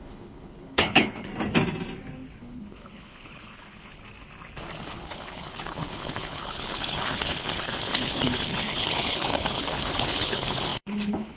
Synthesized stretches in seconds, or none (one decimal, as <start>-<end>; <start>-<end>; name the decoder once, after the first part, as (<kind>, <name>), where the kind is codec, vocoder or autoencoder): 0.0-1.3 (codec, HILCodec); 2.4-4.0; 4.8-11.4